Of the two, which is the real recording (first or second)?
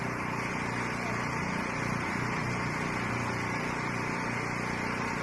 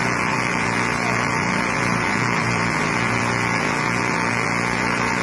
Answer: first